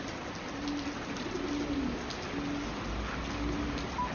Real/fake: real